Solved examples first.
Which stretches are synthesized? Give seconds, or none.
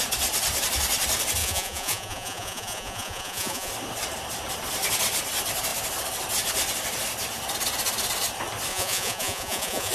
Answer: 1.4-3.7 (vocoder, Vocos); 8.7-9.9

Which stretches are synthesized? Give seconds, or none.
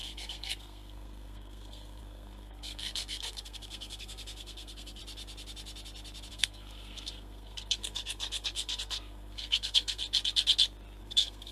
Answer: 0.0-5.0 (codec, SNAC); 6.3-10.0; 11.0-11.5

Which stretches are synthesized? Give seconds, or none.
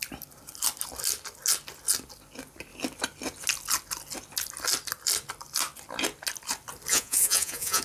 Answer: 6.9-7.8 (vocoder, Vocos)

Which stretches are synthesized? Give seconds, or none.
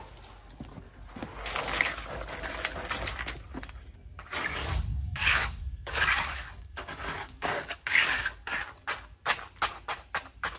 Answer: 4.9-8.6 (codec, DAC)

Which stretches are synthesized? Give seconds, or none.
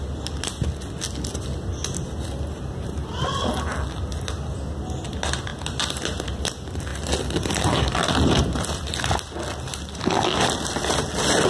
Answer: 6.9-8.4 (vocoder, BigVGAN v2)